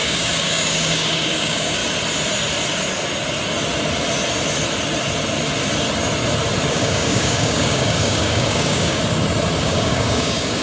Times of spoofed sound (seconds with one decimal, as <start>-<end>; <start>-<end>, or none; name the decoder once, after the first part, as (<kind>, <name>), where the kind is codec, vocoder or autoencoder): 0.0-1.8 (codec, DAC); 6.7-9.0; 9.6-10.6